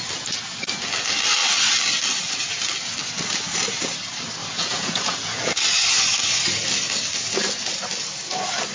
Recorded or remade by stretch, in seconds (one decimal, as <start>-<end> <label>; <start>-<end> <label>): 0.0-4.4 recorded; 4.4-5.6 remade; 5.6-8.7 recorded